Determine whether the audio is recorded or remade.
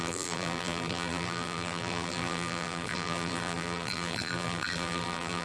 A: remade